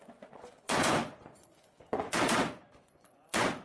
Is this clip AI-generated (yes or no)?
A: yes